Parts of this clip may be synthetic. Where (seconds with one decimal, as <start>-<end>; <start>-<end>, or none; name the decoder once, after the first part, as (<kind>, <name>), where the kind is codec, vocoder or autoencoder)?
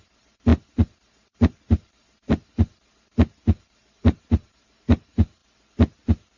0.0-5.4 (vocoder, BigVGAN v2)